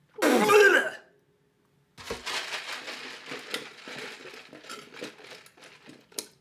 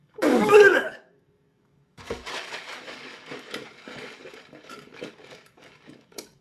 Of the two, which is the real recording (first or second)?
first